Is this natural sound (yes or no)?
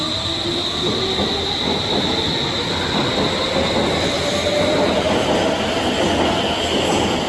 yes